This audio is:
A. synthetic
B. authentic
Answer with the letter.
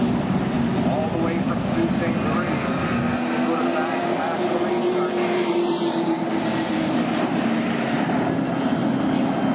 B